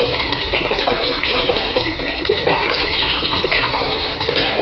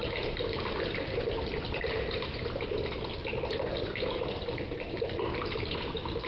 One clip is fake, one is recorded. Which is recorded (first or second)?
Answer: second